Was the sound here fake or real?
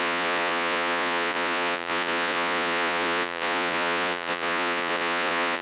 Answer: fake